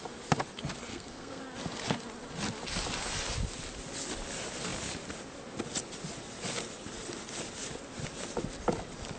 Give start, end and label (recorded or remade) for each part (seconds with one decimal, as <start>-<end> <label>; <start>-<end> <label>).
0.0-0.9 recorded; 0.9-1.4 remade; 1.4-9.2 recorded